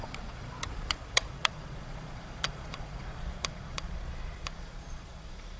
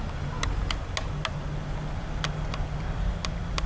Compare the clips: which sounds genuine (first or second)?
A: second